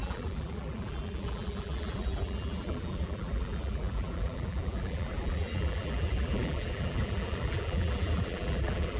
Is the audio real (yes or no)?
no